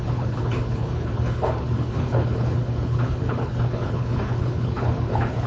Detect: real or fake fake